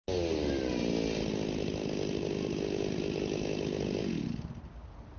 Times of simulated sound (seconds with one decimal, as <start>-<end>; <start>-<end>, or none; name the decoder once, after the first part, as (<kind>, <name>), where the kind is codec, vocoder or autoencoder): none

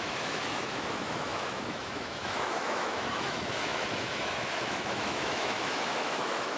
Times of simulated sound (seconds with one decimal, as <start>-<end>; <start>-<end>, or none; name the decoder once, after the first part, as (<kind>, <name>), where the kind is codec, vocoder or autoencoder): 0.0-6.6 (autoencoder, DAC-VAE)